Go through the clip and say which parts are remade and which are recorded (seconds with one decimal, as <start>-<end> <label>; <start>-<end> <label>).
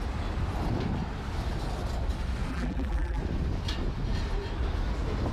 0.0-2.5 recorded; 2.5-3.2 remade; 3.2-5.3 recorded